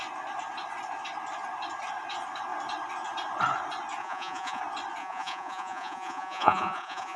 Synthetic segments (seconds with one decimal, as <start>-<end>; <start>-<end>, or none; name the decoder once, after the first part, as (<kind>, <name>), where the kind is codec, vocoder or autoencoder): 4.0-4.6 (vocoder, Vocos); 5.0-7.2